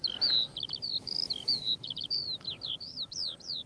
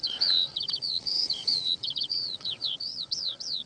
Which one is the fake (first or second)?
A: second